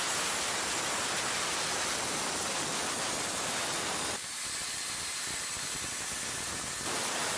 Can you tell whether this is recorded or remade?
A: recorded